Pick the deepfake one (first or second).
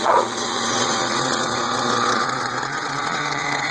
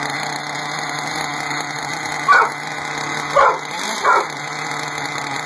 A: first